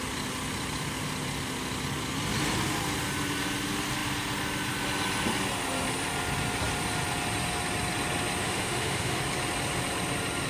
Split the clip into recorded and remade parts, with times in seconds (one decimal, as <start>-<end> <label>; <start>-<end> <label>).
0.0-8.4 recorded; 8.4-9.2 remade; 9.2-10.5 recorded